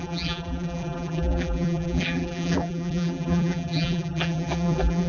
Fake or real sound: fake